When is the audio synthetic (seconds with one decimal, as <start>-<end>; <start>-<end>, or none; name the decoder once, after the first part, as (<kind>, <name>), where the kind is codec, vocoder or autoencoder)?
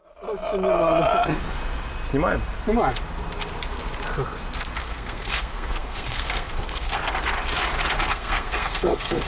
4.8-7.0 (codec, SNAC); 8.1-9.3